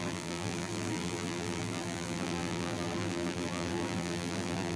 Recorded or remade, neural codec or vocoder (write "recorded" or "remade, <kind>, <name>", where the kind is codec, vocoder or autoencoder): remade, vocoder, BigVGAN v2